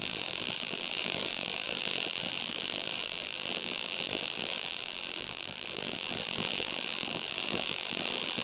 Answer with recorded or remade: remade